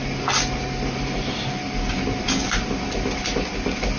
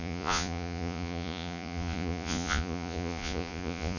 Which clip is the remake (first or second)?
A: second